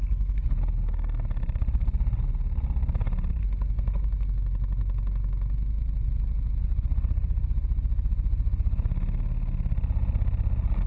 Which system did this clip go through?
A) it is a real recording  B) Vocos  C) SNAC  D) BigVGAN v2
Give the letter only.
A